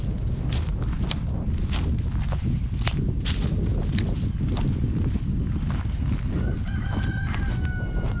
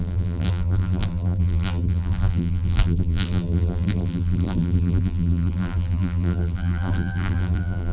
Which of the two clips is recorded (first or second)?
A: first